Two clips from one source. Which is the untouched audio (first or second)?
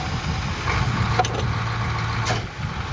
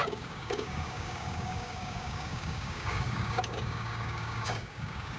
first